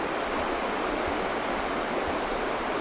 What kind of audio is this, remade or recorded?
recorded